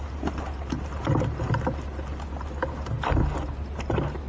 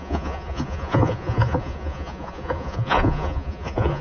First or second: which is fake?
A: second